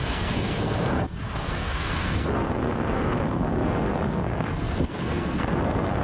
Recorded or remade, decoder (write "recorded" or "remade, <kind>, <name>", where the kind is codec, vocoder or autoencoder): remade, codec, SNAC